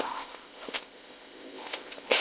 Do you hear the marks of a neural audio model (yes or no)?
yes